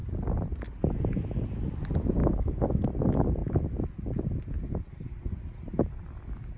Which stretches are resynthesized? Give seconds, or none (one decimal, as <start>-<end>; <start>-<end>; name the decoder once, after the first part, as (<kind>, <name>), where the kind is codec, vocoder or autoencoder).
2.2-2.9 (codec, DAC)